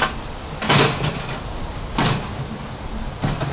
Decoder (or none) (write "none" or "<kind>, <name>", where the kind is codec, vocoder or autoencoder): none